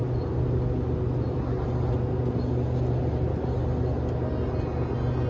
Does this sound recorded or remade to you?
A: recorded